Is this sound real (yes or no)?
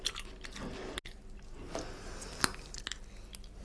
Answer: yes